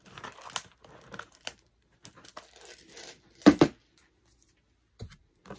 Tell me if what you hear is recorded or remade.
recorded